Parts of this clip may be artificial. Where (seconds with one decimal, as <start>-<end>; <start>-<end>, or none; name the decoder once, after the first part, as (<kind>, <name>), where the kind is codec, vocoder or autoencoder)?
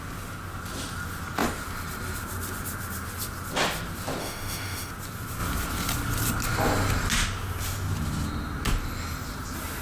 4.2-4.9 (autoencoder, DAC-VAE)